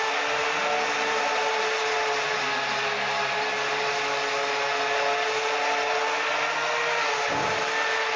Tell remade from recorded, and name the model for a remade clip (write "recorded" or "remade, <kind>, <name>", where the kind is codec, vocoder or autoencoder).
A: recorded